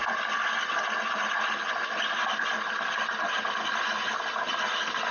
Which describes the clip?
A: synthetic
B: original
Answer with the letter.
B